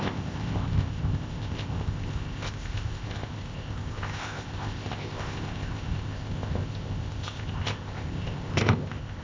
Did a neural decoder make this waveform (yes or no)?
yes